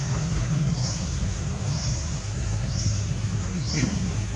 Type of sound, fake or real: fake